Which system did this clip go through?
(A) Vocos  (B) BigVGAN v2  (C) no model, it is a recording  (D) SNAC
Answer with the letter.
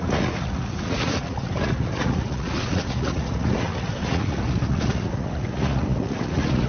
A